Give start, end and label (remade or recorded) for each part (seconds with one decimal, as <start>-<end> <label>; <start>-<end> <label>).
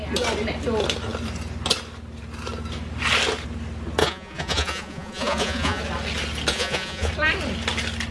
0.0-4.0 recorded; 4.0-5.8 remade; 5.8-6.5 recorded; 6.5-7.1 remade; 7.1-8.1 recorded